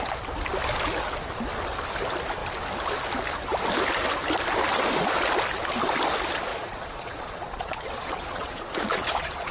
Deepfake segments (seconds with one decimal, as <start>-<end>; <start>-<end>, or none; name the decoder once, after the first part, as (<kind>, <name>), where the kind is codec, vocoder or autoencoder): 6.5-9.5 (vocoder, Vocos)